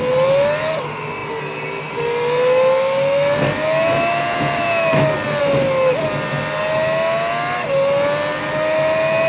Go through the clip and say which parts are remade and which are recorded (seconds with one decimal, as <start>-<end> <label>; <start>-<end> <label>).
0.0-9.3 recorded